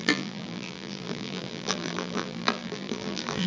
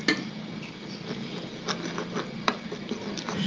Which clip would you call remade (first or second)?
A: first